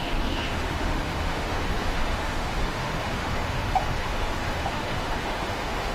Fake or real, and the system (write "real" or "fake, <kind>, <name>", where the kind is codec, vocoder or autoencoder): fake, autoencoder, DAC-VAE